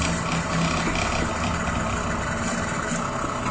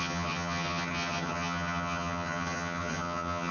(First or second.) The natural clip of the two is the first